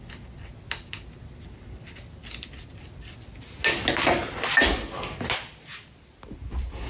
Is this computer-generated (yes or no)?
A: no